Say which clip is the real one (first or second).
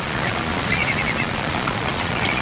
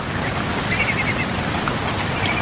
second